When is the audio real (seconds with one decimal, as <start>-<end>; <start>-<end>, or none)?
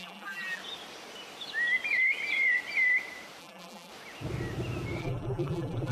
0.6-3.4; 3.9-5.0